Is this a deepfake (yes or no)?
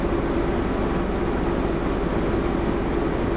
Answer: no